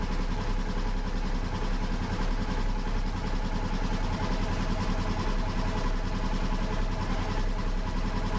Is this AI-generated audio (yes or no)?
no